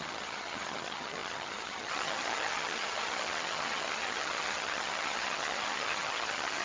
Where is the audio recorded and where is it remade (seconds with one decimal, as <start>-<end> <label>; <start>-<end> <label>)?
0.0-6.6 remade